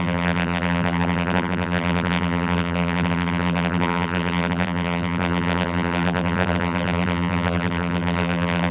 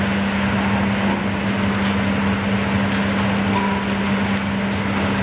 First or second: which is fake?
first